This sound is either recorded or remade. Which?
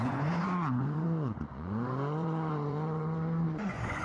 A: remade